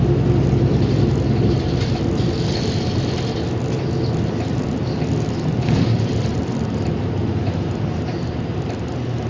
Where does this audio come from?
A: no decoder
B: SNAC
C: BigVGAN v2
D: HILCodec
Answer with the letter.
A